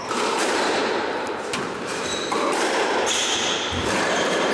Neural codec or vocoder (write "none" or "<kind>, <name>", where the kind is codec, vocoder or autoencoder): vocoder, BigVGAN v2